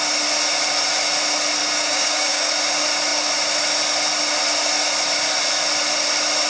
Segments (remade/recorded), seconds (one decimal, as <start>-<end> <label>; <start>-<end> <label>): 0.0-1.6 recorded; 1.6-2.5 remade; 2.5-6.5 recorded